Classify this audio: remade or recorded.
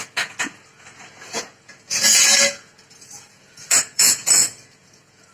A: remade